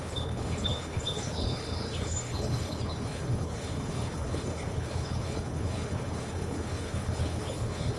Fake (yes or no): yes